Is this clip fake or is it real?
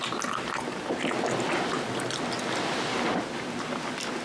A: real